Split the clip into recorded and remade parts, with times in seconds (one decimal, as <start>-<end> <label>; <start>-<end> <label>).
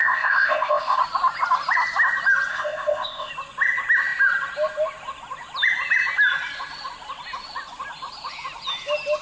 0.0-1.0 remade; 1.0-2.5 recorded; 2.5-3.3 remade; 3.3-9.2 recorded